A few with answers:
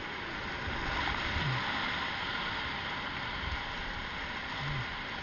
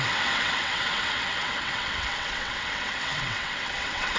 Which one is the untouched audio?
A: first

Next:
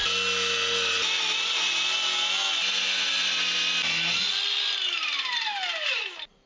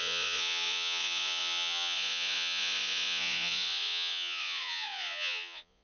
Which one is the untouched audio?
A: first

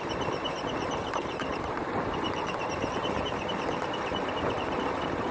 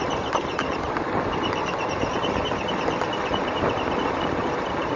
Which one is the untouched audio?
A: second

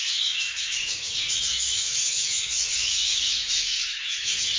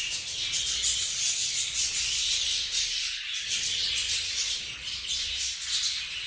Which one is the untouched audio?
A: second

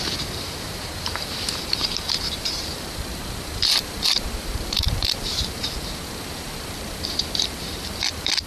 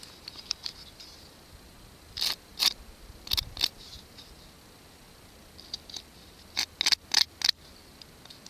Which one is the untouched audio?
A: second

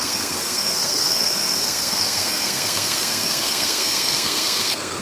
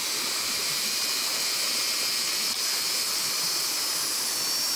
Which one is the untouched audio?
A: second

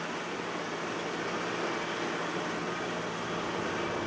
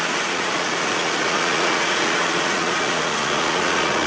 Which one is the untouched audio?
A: first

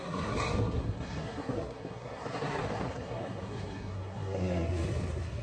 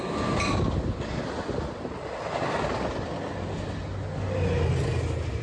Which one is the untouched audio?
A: second